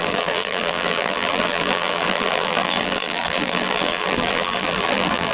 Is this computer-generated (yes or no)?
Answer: yes